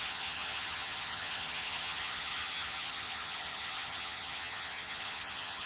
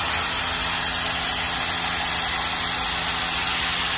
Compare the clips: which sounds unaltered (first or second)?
second